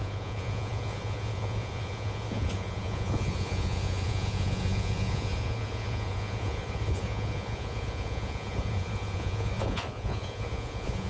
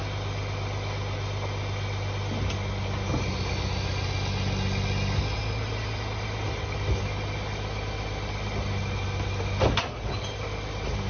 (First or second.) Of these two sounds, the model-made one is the first